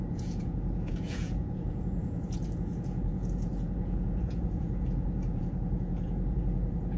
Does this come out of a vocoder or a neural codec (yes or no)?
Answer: yes